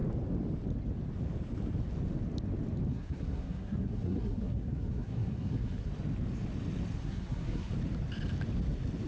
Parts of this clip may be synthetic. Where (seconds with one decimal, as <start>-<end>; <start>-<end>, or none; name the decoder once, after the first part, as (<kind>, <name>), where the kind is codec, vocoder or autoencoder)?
2.9-5.9 (codec, SNAC); 7.0-7.7